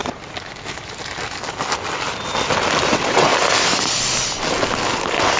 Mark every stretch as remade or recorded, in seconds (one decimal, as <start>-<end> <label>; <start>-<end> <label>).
0.0-2.9 recorded; 2.9-3.3 remade; 3.3-5.4 recorded

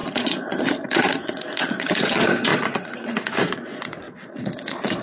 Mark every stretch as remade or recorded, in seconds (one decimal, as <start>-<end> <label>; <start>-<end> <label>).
0.0-5.0 remade

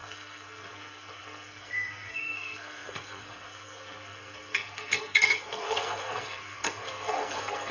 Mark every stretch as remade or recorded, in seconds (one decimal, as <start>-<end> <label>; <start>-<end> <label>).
0.0-7.7 remade